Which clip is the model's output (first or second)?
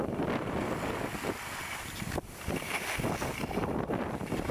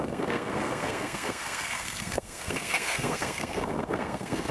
second